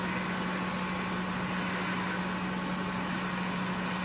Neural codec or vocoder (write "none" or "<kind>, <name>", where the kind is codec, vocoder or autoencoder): none